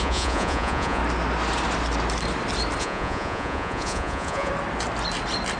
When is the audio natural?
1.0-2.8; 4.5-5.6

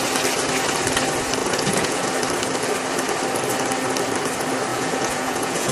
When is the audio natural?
0.0-1.4; 2.1-4.7

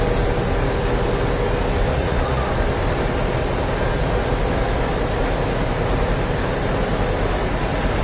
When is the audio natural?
0.0-1.9; 2.5-8.0